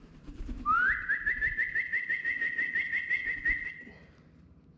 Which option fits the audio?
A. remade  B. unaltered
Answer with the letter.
B